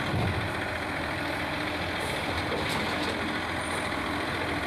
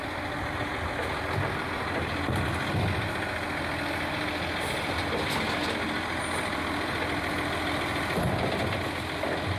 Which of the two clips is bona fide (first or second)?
second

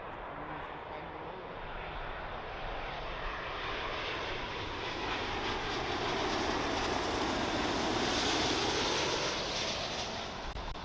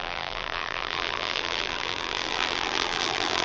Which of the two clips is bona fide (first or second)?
first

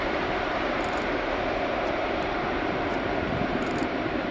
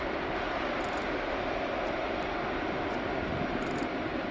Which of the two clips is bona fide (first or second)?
second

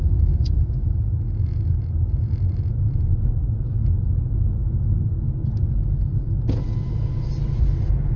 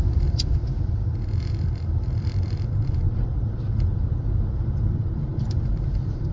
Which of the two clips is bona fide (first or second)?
first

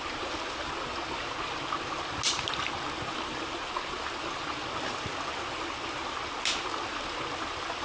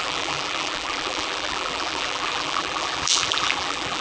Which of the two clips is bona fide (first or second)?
first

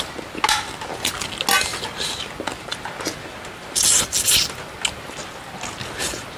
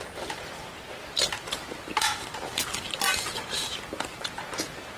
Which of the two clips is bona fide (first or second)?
first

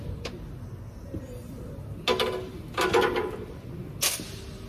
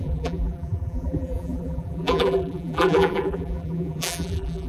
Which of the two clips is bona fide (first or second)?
first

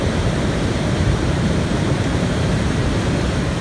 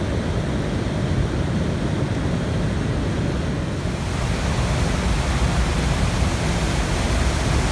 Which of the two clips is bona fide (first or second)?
second